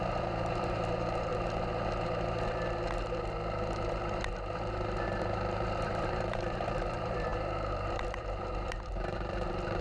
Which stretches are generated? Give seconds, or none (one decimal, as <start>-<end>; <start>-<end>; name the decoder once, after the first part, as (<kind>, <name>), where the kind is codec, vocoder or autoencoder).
0.0-1.3 (vocoder, BigVGAN v2); 5.2-9.8